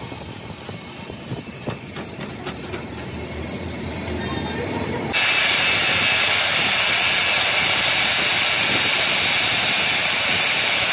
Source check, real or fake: real